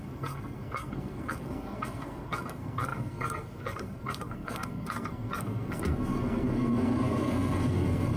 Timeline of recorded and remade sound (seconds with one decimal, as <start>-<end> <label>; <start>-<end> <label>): 0.0-8.2 remade